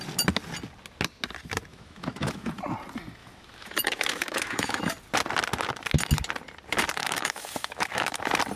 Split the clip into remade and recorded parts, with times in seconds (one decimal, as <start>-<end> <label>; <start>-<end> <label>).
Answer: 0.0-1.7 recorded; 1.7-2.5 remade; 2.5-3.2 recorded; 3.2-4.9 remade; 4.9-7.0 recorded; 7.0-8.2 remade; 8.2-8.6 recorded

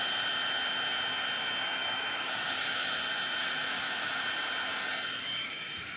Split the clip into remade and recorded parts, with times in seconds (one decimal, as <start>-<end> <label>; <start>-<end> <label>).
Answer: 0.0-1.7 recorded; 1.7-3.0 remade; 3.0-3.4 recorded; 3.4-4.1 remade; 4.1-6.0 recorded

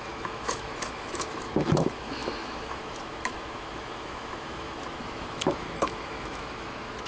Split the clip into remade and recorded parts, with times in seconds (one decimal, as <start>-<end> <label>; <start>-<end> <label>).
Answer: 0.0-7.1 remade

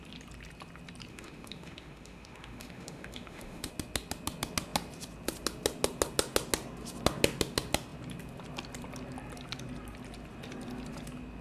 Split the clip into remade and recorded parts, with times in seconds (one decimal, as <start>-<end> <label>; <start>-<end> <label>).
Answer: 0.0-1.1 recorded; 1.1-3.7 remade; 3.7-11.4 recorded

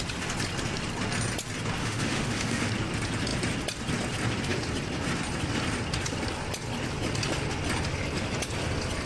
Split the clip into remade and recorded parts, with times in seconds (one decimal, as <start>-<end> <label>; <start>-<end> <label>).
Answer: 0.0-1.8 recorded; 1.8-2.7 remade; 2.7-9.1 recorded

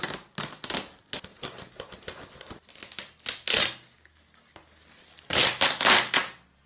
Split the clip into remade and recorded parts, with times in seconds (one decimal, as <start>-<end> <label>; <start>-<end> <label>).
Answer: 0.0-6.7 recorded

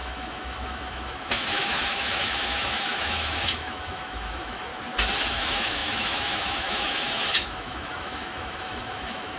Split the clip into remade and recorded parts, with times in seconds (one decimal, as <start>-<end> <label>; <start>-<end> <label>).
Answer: 0.0-4.7 remade; 4.7-5.3 recorded; 5.3-9.4 remade